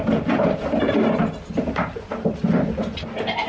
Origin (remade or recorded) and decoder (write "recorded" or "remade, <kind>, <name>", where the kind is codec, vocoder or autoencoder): recorded